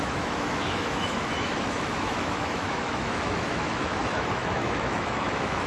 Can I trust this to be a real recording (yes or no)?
no